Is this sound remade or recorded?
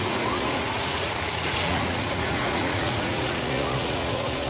remade